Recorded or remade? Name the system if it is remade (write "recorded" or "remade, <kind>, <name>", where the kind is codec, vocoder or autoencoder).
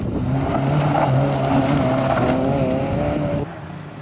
recorded